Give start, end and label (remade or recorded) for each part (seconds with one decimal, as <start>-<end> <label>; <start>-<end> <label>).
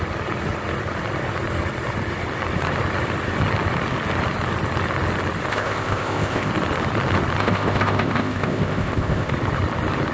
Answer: 0.0-5.5 recorded; 5.5-6.5 remade; 6.5-7.4 recorded; 7.4-9.3 remade; 9.3-10.1 recorded